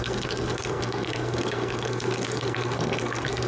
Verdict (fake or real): fake